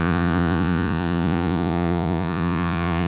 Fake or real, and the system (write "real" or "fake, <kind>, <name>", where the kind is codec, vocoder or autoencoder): fake, vocoder, Vocos